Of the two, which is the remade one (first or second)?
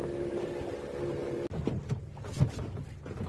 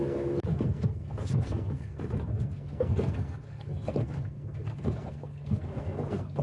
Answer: second